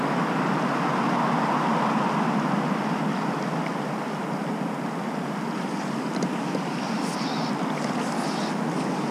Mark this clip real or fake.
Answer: real